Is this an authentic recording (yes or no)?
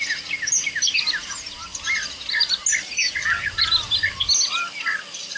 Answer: yes